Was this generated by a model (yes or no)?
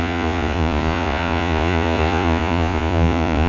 yes